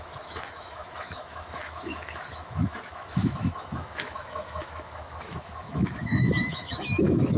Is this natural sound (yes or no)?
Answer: no